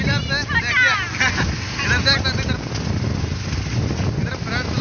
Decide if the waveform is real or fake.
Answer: real